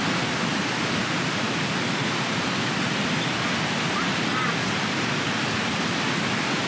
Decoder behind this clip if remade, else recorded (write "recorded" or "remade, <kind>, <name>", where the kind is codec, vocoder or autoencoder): recorded